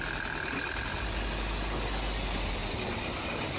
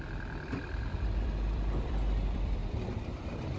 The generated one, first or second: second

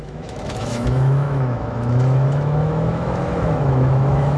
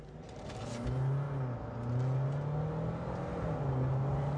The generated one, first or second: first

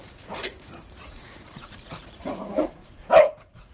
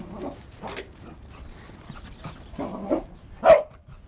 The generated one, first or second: first